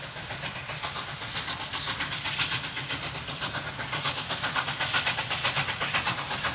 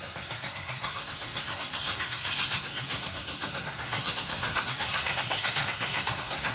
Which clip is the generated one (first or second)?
second